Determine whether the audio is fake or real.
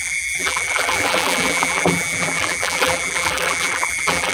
fake